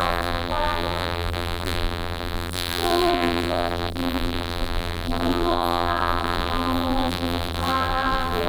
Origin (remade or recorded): remade